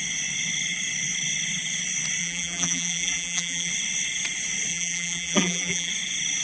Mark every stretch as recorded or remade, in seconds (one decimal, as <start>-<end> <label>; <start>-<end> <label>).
0.0-2.2 recorded; 2.2-3.7 remade; 3.7-4.7 recorded; 4.7-5.9 remade; 5.9-6.4 recorded